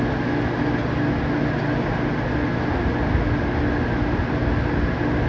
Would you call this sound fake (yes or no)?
no